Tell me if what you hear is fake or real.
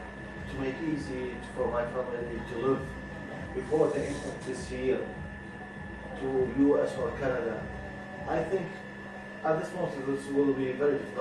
real